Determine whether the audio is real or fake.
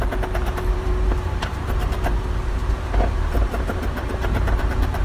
fake